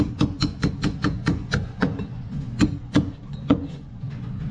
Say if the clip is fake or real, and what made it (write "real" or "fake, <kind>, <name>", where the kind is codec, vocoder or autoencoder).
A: fake, vocoder, Vocos